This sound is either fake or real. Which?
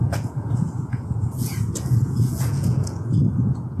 fake